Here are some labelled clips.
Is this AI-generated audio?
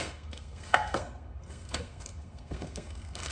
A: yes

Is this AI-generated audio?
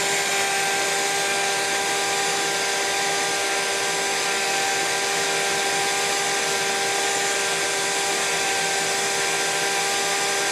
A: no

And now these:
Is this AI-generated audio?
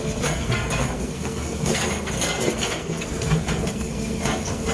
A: yes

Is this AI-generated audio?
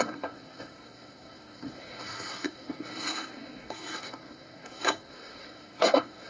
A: yes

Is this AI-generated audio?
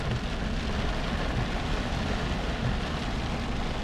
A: no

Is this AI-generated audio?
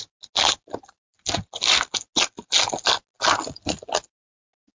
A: no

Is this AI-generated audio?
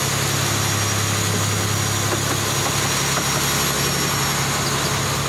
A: no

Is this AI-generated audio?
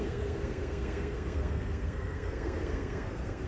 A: yes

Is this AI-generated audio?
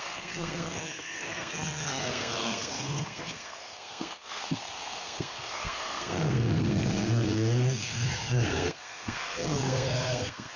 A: yes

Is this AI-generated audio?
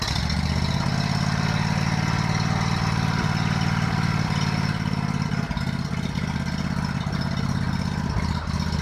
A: no